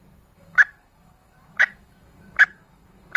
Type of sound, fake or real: fake